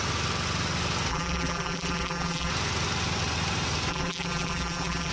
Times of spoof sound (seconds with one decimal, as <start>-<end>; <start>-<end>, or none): 1.1-2.5; 3.9-5.1